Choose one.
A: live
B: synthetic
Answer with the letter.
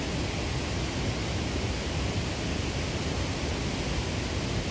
A